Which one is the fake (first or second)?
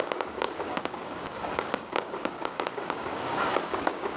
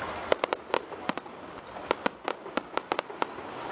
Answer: first